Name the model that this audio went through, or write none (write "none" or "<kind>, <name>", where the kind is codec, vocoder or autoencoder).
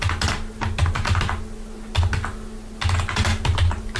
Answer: none